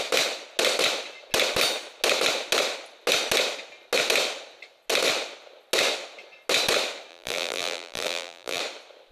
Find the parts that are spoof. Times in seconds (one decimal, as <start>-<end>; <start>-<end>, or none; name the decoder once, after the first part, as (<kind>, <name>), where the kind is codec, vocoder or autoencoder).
7.1-8.6 (vocoder, BigVGAN v2)